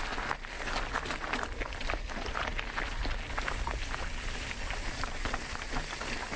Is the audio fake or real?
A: real